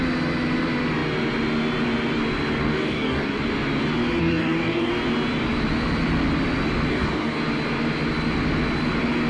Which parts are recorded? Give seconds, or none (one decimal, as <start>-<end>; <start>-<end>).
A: 0.0-2.6; 3.4-4.2; 4.9-6.9; 7.4-9.3